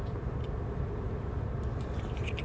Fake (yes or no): no